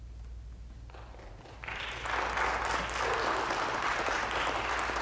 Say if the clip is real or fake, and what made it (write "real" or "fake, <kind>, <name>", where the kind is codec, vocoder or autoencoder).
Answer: real